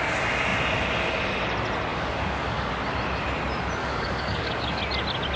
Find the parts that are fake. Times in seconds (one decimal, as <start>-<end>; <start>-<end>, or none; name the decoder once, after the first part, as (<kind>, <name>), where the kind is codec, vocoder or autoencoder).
1.9-2.7 (codec, DAC); 3.8-4.8